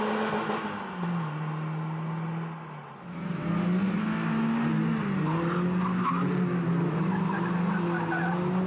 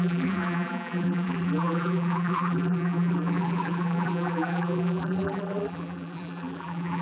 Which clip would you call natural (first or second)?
first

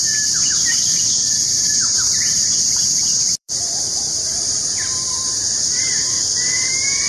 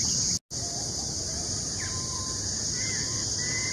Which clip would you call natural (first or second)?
second